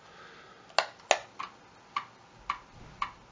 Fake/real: real